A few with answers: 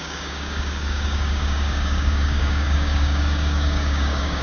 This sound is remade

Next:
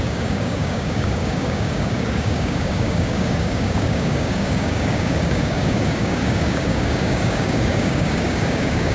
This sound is remade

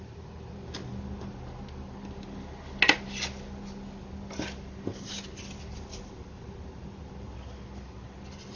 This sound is recorded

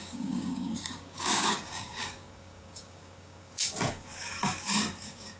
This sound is remade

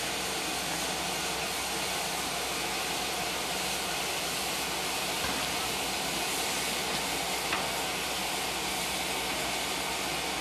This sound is recorded